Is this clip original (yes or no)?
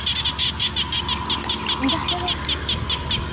yes